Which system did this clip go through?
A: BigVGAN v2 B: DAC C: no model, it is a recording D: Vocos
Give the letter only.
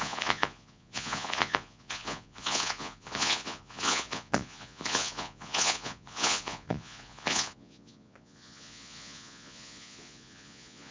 D